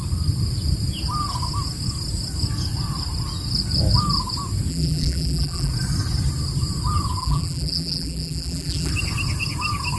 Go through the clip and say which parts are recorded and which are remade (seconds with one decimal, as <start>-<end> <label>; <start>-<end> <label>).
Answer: 0.0-4.7 recorded; 4.7-5.7 remade; 5.7-7.2 recorded; 7.2-8.9 remade; 8.9-10.0 recorded